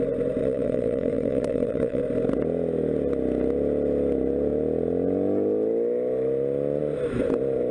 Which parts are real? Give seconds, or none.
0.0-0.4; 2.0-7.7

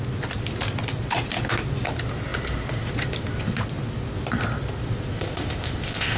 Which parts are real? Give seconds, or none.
0.0-5.1

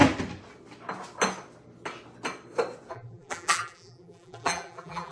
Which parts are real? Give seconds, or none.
0.0-2.9